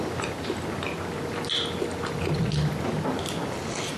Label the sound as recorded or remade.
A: recorded